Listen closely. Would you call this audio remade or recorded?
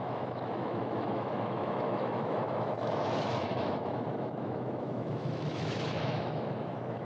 remade